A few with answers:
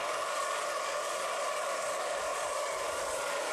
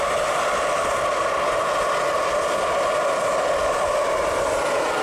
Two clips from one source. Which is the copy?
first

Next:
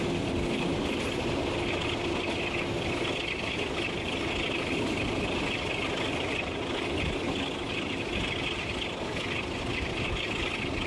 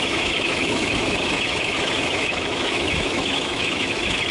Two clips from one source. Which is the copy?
second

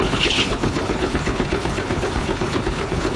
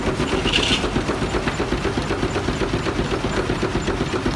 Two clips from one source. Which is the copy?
first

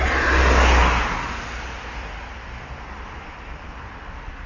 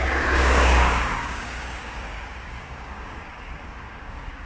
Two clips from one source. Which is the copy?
second